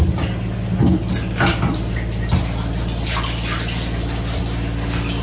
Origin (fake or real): real